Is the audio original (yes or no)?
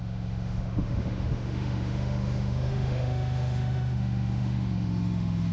no